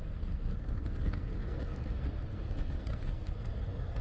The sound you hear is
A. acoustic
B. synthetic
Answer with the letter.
B